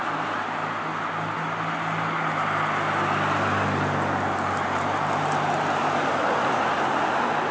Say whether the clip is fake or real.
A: real